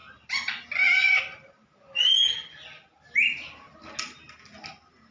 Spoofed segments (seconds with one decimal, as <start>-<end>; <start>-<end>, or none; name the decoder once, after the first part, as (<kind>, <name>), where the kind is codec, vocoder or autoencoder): none